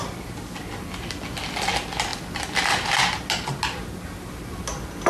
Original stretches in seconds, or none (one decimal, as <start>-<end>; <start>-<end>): 0.5-2.1; 2.9-5.1